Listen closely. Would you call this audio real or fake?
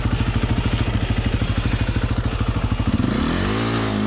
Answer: real